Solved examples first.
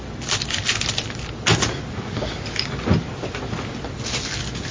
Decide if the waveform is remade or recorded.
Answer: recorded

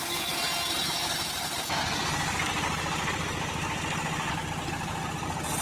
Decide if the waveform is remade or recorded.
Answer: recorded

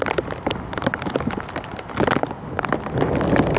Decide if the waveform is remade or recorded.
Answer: recorded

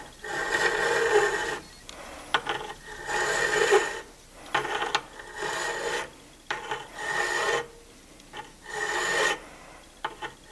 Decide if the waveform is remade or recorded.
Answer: recorded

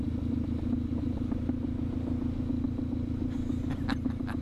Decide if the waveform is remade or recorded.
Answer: recorded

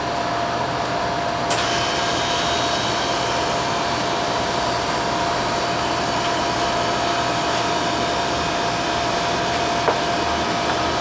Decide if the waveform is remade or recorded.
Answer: recorded